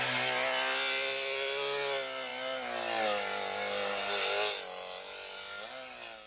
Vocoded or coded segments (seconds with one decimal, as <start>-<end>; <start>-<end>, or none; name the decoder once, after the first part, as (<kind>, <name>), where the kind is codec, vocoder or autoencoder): none